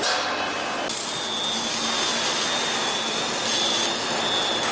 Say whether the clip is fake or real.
real